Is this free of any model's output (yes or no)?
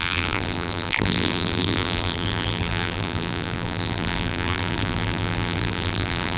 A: no